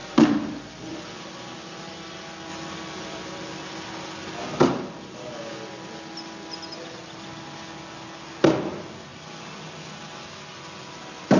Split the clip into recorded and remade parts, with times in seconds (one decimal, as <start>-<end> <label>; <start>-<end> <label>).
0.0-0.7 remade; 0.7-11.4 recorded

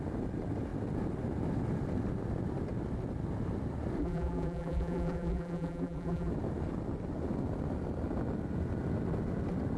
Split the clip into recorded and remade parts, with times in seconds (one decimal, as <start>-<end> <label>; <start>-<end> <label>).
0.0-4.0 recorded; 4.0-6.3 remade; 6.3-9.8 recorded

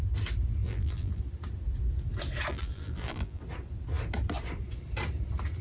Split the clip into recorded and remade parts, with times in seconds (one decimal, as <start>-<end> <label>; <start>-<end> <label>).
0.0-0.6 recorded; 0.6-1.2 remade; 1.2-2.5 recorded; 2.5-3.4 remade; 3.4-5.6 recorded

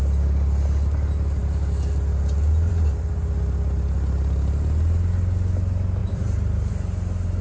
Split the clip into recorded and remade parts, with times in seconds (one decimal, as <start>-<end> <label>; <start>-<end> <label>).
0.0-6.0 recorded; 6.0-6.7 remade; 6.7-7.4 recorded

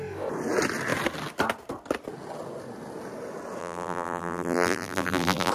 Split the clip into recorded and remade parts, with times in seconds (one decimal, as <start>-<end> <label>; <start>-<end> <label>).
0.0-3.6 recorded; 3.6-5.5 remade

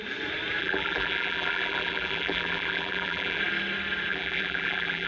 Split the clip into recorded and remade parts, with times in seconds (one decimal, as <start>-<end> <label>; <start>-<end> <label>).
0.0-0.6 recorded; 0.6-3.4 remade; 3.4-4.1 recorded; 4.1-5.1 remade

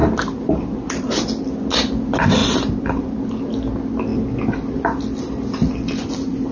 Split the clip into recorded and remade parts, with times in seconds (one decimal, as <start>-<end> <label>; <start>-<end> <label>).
0.0-2.4 recorded; 2.4-3.3 remade; 3.3-6.5 recorded

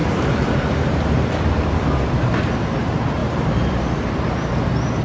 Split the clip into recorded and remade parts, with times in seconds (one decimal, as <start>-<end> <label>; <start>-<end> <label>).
0.0-1.5 remade; 1.5-3.2 recorded; 3.2-4.1 remade; 4.1-5.0 recorded